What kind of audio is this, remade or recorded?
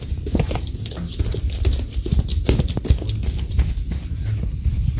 recorded